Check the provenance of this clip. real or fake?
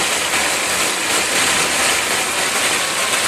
real